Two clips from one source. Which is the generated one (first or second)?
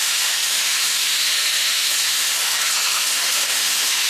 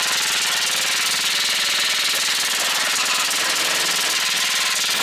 first